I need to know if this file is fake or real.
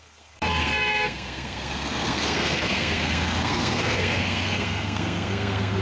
fake